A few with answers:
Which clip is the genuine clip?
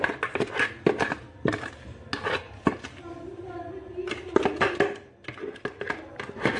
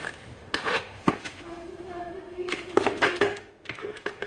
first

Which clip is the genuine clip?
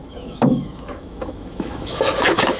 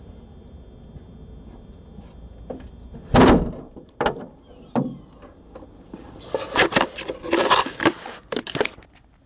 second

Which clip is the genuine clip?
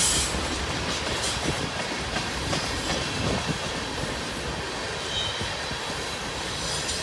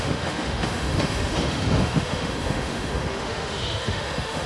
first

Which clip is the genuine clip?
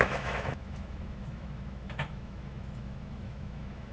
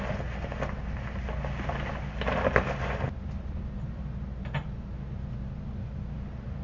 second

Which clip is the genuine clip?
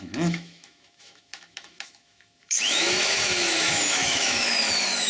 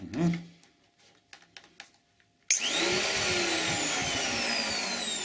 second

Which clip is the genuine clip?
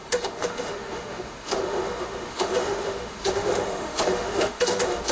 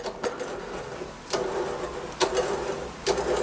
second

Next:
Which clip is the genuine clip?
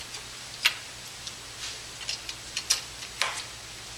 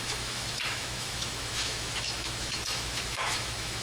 first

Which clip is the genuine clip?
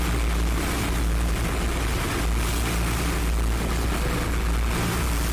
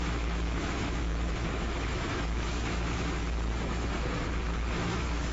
first